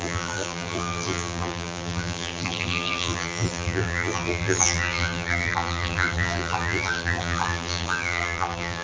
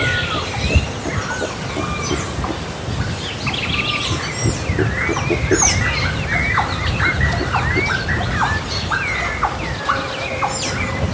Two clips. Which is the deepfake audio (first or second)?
first